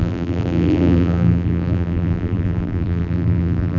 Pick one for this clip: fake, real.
fake